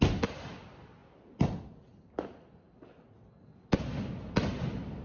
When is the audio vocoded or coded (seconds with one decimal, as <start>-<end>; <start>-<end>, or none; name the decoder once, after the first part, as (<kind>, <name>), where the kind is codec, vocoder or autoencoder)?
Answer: none